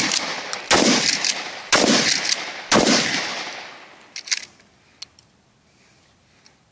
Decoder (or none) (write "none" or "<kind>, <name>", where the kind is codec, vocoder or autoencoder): none